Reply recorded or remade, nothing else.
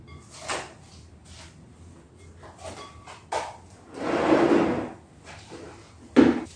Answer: recorded